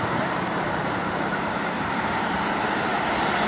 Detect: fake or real fake